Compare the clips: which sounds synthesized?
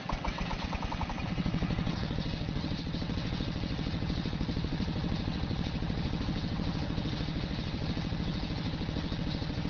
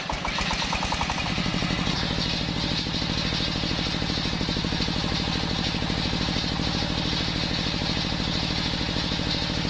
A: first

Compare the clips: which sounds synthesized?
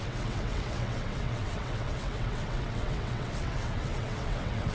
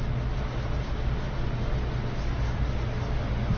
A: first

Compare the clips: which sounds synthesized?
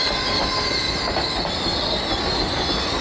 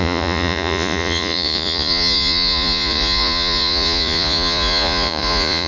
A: second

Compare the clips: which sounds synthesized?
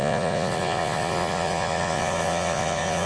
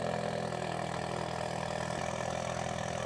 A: first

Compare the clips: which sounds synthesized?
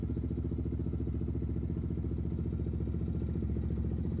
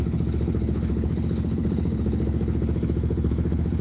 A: second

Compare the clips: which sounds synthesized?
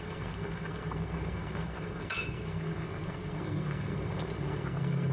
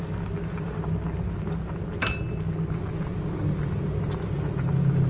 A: first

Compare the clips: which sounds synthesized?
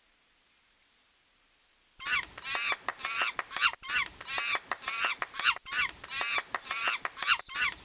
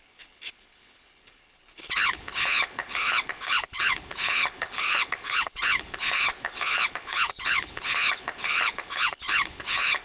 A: second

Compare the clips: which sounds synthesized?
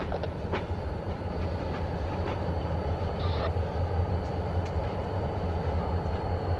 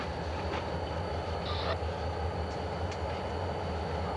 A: first